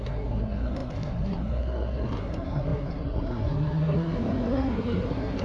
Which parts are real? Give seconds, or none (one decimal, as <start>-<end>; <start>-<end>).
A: none